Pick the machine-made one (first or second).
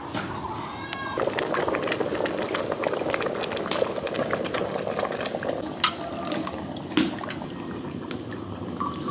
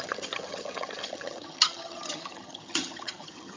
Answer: second